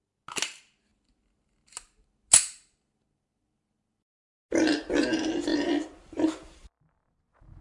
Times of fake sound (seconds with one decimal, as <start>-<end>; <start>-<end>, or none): none